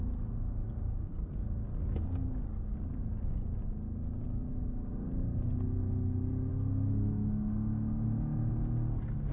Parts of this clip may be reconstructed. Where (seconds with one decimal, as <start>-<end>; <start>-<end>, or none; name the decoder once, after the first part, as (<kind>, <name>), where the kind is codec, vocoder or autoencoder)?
6.5-8.5 (autoencoder, DAC-VAE)